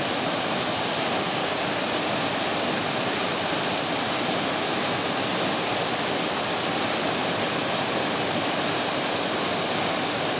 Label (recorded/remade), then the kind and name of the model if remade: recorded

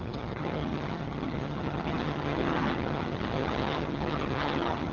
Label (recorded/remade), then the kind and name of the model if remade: remade, vocoder, HiFi-GAN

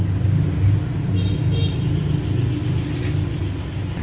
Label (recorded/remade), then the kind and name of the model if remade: recorded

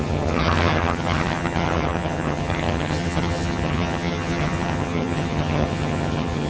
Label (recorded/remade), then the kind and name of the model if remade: remade, vocoder, HiFi-GAN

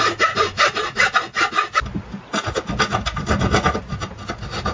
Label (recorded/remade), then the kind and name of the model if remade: recorded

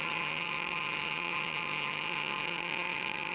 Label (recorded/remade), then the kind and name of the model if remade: remade, vocoder, HiFi-GAN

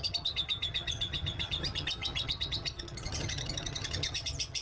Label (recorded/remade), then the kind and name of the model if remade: remade, vocoder, HiFi-GAN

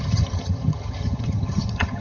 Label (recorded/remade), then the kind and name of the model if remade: remade, vocoder, HiFi-GAN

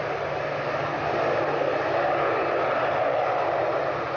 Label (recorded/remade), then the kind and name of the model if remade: recorded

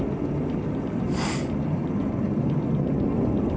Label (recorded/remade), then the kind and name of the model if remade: recorded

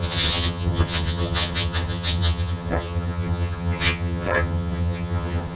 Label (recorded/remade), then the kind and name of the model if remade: remade, vocoder, HiFi-GAN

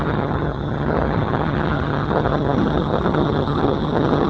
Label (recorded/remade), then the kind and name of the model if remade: remade, vocoder, HiFi-GAN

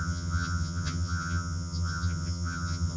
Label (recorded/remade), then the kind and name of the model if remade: remade, vocoder, HiFi-GAN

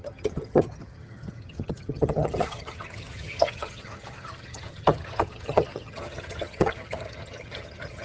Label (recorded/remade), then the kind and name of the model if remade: remade, vocoder, HiFi-GAN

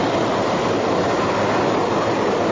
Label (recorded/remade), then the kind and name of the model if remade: recorded